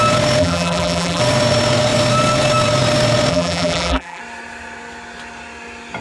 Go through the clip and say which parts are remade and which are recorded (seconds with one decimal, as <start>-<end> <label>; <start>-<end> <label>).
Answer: 0.0-0.4 recorded; 0.4-1.2 remade; 1.2-3.3 recorded; 3.3-4.2 remade; 4.2-6.0 recorded